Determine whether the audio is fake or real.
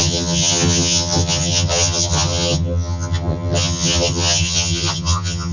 fake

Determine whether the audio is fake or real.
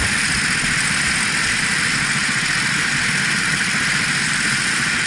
real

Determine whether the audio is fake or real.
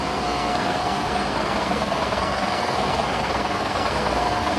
fake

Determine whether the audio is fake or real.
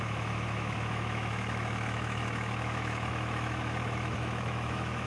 fake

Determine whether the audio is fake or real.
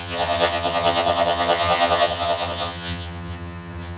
fake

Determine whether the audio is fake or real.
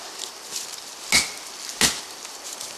real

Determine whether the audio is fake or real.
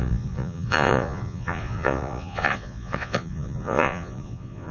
fake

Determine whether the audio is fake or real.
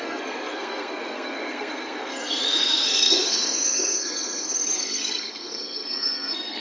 fake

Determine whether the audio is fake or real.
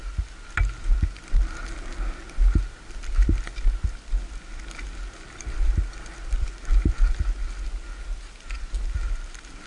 real